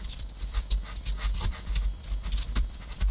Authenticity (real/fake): real